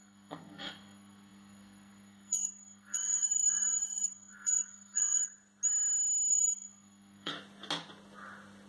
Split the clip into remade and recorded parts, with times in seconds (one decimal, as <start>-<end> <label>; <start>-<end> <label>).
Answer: 0.0-5.2 remade; 5.2-6.3 recorded; 6.3-7.3 remade; 7.3-8.7 recorded